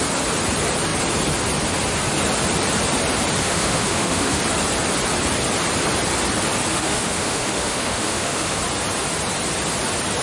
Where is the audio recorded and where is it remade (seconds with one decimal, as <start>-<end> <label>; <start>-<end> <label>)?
0.0-3.4 recorded; 3.4-4.4 remade; 4.4-6.7 recorded; 6.7-8.6 remade; 8.6-10.2 recorded

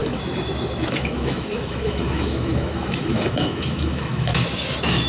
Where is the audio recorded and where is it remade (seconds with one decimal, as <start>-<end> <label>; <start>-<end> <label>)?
0.0-5.1 remade